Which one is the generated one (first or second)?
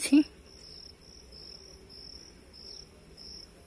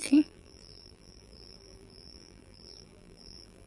second